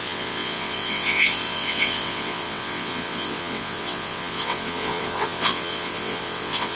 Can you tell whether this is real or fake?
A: fake